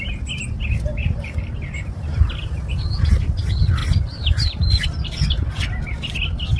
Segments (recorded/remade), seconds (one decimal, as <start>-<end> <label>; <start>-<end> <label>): 0.0-1.0 recorded; 1.0-2.2 remade; 2.2-3.8 recorded; 3.8-6.6 remade